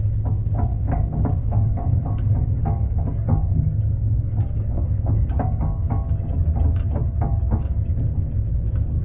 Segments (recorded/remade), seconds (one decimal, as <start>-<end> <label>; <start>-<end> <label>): 0.0-0.7 recorded; 0.7-5.9 remade; 5.9-9.0 recorded

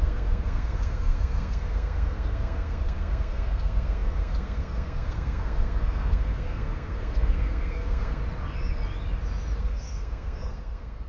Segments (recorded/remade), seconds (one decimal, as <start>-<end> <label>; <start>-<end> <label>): 0.0-8.2 remade; 8.2-9.6 recorded; 9.6-11.1 remade

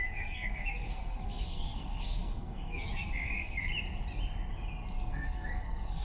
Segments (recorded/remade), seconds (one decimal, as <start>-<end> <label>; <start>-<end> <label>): 0.0-3.7 remade; 3.7-5.1 recorded; 5.1-6.0 remade

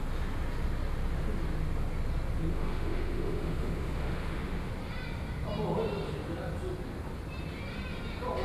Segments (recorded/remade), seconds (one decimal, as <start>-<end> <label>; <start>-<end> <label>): 0.0-2.5 recorded; 2.5-4.7 remade; 4.7-8.4 recorded